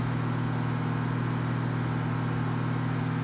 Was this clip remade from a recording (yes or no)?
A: no